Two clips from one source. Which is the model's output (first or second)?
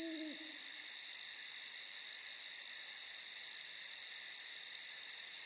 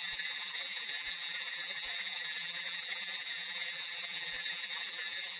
second